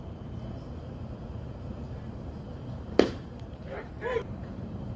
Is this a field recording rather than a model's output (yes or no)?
no